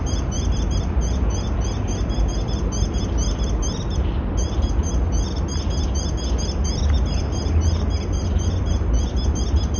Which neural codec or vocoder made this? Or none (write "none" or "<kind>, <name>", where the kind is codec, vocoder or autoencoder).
none